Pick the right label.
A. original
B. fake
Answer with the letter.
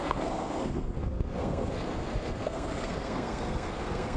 B